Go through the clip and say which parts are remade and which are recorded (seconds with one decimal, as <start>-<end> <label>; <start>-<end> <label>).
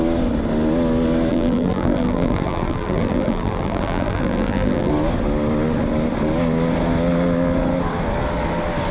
0.0-1.3 recorded; 1.3-4.9 remade; 4.9-8.9 recorded